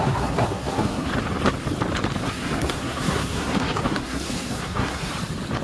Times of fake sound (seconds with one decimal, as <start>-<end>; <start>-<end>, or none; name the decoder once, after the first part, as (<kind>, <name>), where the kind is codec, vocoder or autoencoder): 0.0-1.1 (codec, SNAC); 2.2-5.1